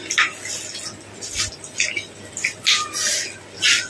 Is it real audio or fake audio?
real